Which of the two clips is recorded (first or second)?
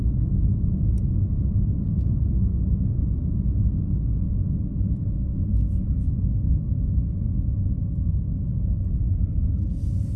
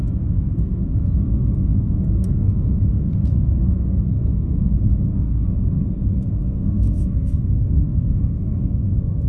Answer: first